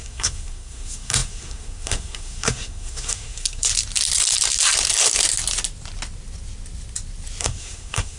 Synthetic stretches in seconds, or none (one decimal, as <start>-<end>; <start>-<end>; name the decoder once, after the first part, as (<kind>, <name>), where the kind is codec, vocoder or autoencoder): 0.0-3.7 (codec, SNAC); 7.4-8.2